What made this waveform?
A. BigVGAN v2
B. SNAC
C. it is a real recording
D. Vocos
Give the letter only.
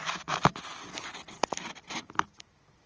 C